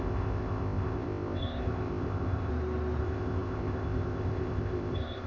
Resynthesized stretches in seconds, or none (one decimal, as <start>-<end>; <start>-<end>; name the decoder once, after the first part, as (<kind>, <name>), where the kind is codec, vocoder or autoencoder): 0.0-2.5 (codec, ZipCodec); 3.0-5.3